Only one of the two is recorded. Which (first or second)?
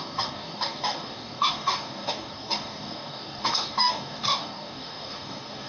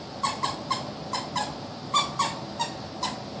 second